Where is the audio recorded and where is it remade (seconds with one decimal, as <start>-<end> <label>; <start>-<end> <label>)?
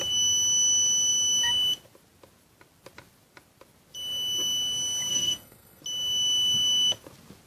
0.0-5.1 recorded; 5.1-5.8 remade; 5.8-7.5 recorded